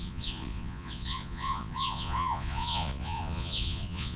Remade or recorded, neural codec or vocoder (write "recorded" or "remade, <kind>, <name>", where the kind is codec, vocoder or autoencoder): remade, vocoder, Vocos